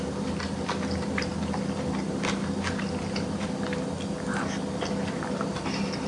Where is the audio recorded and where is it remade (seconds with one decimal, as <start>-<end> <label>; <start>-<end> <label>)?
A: 0.0-6.1 recorded